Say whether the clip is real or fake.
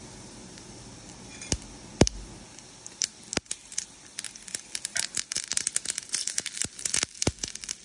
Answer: real